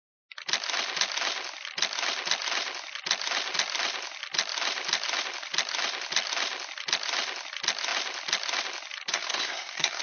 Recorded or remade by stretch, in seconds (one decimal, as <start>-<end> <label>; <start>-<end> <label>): 0.0-9.1 recorded; 9.1-10.0 remade